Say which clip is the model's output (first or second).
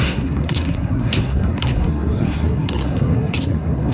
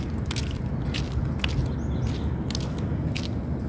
first